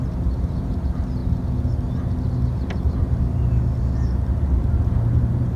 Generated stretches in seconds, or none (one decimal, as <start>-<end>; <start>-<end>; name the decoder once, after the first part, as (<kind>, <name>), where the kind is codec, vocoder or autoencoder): 0.0-1.2 (vocoder, BigVGAN v2); 4.4-5.6

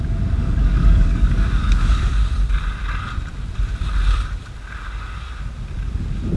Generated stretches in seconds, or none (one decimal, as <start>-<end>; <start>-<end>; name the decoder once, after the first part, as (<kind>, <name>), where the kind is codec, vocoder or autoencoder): 0.4-2.1 (codec, DAC)

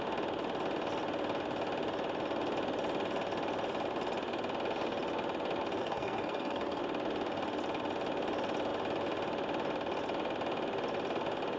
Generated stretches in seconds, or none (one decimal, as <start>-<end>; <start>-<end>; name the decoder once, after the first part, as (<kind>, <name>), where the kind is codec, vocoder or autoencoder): 5.8-6.8 (codec, SNAC)